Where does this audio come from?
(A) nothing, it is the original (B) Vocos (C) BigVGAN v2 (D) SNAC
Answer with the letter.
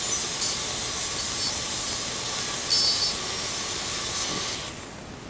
A